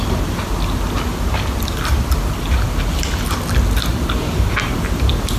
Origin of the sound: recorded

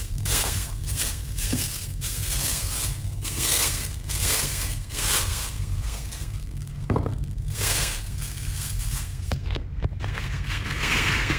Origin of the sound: remade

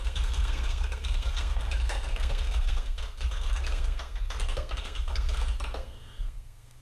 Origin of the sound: remade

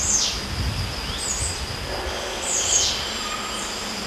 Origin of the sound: recorded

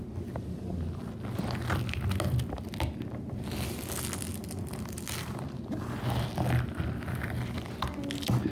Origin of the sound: recorded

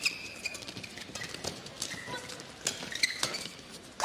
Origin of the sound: recorded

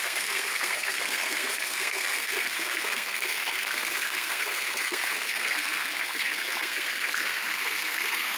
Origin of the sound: remade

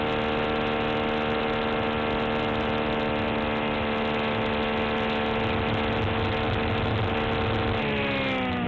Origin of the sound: recorded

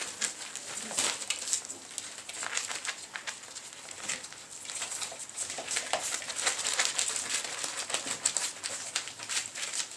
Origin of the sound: recorded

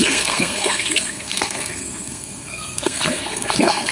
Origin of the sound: remade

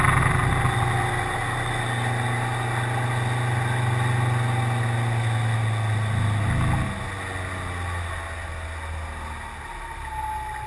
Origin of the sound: recorded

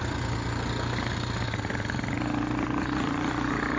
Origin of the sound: recorded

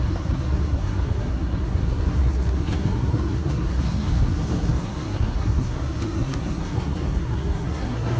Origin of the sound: remade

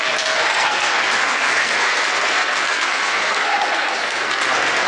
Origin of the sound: remade